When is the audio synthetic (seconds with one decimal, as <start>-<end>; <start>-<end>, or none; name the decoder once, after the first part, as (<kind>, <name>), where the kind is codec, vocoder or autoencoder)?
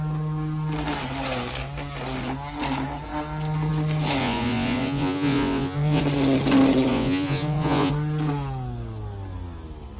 4.2-6.0 (vocoder, Vocos); 6.9-7.9